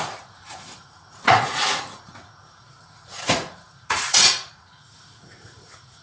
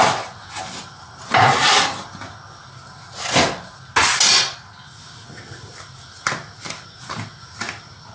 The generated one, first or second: first